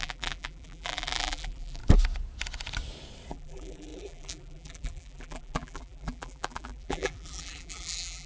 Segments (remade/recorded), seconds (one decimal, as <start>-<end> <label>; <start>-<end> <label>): 0.0-1.8 remade; 1.8-3.3 recorded; 3.3-8.3 remade